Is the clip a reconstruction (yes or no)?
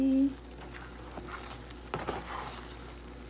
no